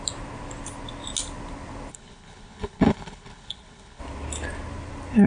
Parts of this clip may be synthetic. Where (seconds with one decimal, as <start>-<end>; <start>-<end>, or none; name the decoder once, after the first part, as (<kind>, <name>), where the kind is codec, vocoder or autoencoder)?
1.9-4.0 (codec, HILCodec)

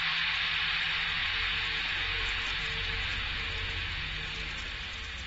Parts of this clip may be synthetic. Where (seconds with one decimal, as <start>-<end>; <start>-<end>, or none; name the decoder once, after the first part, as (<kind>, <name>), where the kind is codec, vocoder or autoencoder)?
1.2-4.4 (vocoder, Vocos)

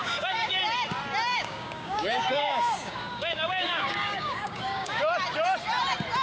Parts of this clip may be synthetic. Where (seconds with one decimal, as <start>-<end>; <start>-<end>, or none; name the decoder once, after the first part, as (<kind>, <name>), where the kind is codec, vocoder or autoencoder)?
0.0-0.6 (codec, DAC); 1.3-5.0

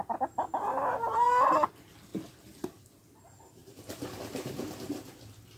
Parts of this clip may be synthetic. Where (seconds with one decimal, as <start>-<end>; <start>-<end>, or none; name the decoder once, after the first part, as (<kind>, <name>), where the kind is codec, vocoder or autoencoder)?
0.9-1.7 (vocoder, BigVGAN v2); 3.6-5.1